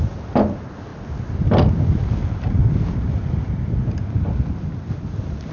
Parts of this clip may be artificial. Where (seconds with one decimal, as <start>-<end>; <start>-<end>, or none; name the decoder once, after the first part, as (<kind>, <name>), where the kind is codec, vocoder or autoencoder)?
none